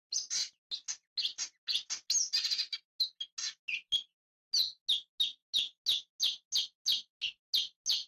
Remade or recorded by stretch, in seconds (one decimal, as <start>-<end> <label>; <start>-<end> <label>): 0.0-8.1 recorded